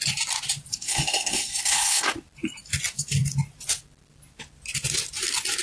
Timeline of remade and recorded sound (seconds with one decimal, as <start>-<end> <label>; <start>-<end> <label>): 0.0-0.7 recorded; 0.7-2.1 remade; 2.1-5.6 recorded